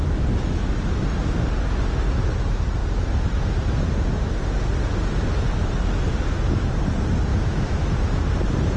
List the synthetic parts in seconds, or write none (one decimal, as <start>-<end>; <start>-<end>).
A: 7.3-7.9